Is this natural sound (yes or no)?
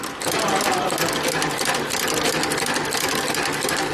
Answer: yes